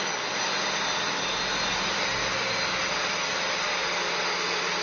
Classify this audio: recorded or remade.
recorded